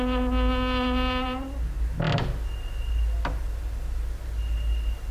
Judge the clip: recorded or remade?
recorded